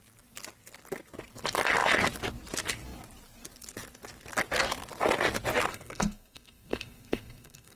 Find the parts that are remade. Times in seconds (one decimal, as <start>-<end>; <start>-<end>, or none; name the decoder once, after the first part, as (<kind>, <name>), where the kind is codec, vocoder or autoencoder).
5.7-7.8 (codec, SNAC)